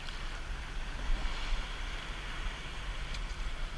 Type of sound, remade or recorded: recorded